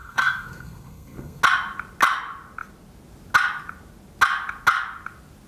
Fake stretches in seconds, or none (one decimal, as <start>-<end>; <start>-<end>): 0.0-1.4